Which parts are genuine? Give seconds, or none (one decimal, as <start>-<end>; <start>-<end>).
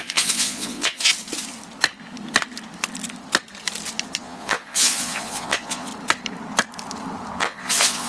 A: 1.1-4.2; 5.9-7.4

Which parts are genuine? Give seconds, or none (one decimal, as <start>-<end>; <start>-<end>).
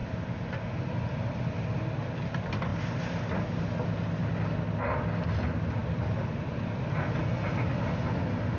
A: 0.9-5.8; 7.2-8.6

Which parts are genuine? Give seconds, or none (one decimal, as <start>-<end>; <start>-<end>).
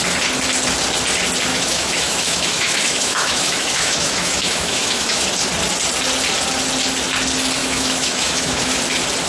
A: 0.0-1.5; 5.3-7.6; 8.8-9.3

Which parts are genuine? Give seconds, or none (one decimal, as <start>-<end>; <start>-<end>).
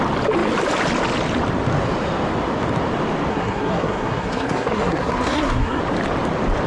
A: 0.0-3.3; 5.8-6.7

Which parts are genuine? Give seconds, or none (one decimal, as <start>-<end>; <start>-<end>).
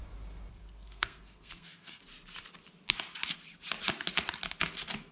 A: 0.0-0.5; 2.0-5.1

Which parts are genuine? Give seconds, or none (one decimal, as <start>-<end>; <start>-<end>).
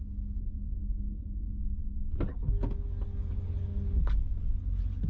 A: 0.0-0.4; 1.6-5.1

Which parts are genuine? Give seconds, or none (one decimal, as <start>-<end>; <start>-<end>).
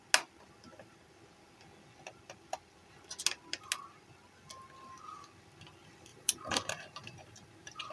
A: 0.0-6.1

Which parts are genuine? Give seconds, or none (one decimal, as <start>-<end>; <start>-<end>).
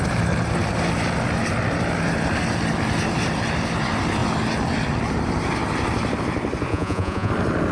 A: 0.0-6.7; 7.3-7.7